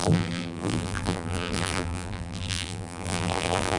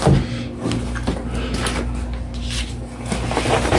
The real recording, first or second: second